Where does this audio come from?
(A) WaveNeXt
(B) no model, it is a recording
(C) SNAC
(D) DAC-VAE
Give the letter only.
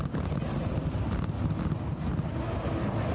B